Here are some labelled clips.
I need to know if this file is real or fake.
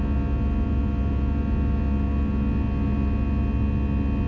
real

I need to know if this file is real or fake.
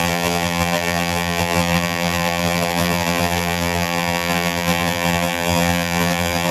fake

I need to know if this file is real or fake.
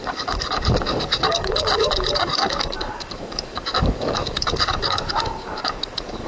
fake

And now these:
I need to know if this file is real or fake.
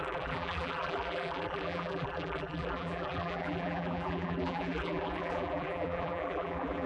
fake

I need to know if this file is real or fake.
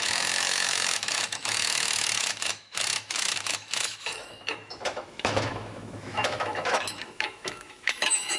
fake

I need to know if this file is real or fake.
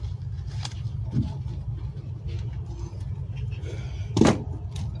real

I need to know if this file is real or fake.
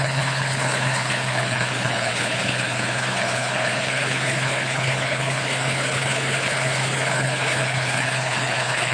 fake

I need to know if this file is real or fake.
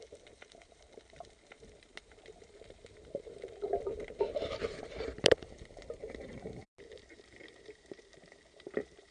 fake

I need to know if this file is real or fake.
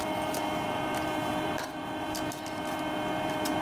fake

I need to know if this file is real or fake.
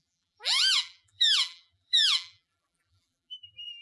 fake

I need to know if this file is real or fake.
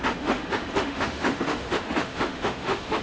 fake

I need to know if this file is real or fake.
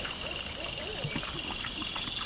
real